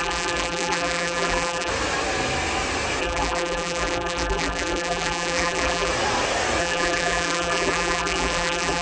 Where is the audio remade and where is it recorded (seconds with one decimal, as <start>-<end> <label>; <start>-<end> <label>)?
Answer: 0.0-1.7 remade; 1.7-3.0 recorded; 3.0-5.9 remade; 5.9-6.6 recorded; 6.6-8.8 remade